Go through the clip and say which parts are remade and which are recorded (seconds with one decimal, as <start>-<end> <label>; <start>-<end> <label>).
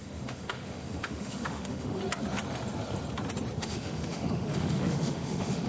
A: 0.0-2.0 remade; 2.0-3.6 recorded; 3.6-5.7 remade